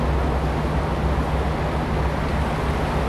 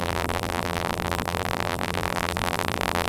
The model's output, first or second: second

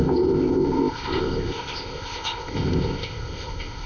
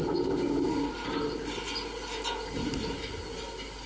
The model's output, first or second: first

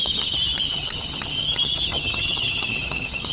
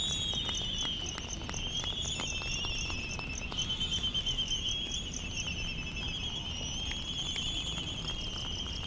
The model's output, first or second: first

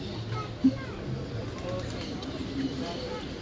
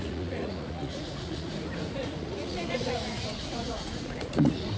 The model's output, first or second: second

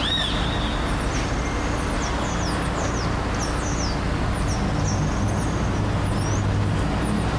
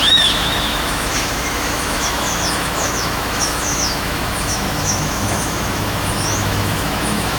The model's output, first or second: second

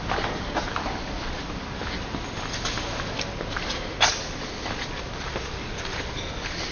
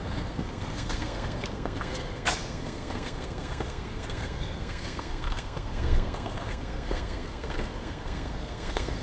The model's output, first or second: second